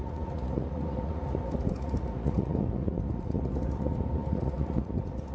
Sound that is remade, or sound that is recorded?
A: remade